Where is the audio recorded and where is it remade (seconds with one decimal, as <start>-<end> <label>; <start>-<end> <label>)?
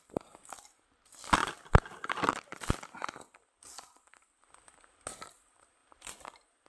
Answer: 0.0-1.4 recorded; 1.4-3.2 remade; 3.2-5.8 recorded; 5.8-6.7 remade